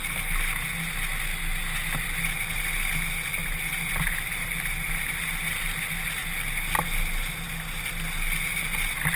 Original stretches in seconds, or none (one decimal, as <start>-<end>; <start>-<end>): 0.0-9.2